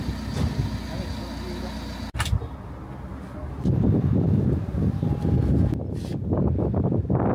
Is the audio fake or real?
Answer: real